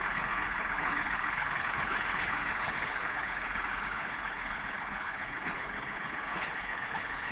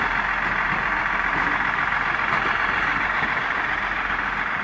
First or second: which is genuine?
second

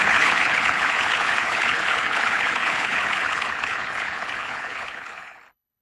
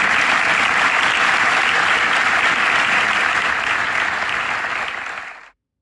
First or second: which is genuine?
second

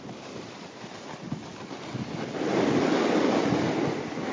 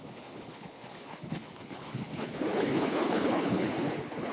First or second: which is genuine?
first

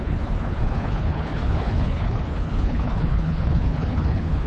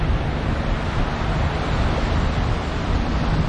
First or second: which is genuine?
second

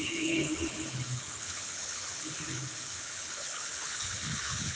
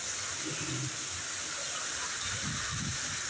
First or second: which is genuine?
second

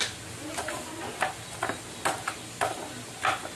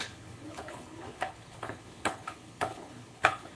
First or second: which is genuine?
first